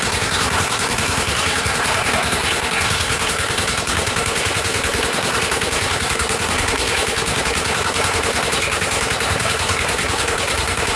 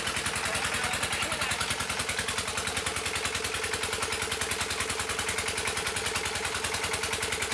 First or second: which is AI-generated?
first